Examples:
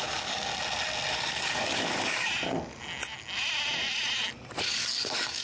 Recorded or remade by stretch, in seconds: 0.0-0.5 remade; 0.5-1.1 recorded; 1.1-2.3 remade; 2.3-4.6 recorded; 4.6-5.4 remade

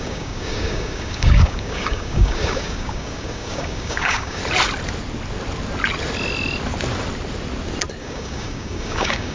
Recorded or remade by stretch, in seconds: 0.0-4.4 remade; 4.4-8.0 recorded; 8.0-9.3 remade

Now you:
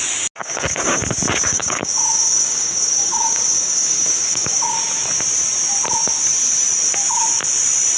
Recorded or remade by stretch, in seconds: 0.0-0.4 recorded; 0.4-1.0 remade; 1.0-1.5 recorded; 1.5-4.8 remade; 4.8-8.0 recorded

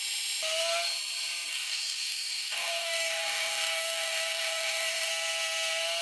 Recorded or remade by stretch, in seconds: 0.0-1.5 recorded; 1.5-5.1 remade; 5.1-6.0 recorded

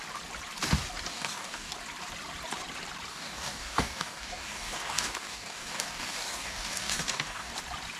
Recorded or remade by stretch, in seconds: 0.0-1.1 recorded; 1.1-1.7 remade; 1.7-3.1 recorded; 3.1-7.5 remade; 7.5-8.0 recorded